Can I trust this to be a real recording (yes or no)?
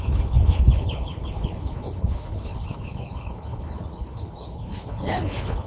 no